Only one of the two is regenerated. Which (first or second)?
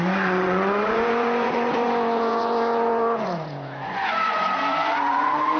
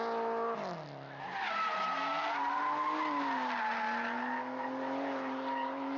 first